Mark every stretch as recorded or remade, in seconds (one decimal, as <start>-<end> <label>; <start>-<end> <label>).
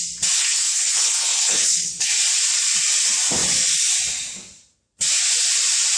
0.0-0.4 recorded; 0.4-2.1 remade; 2.1-6.0 recorded